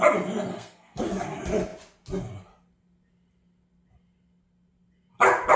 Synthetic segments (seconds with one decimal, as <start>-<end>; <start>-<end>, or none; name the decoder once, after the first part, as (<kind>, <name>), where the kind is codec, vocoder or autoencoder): 0.5-1.0 (codec, SNAC)